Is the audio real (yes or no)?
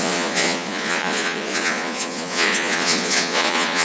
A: no